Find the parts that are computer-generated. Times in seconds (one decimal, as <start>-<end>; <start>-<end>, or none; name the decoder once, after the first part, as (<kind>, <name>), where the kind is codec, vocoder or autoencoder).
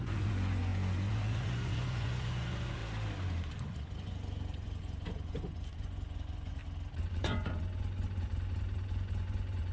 0.0-2.8 (vocoder, Vocos); 3.6-6.6; 7.1-9.7